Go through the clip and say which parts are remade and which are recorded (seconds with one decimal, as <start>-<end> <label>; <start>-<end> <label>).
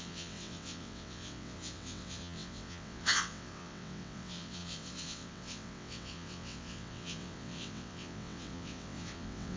0.0-9.6 remade